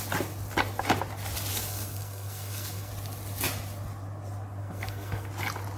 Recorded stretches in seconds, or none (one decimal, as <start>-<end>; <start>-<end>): 0.0-1.5; 2.9-4.6; 5.3-5.8